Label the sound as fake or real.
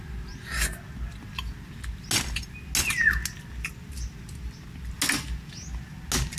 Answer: real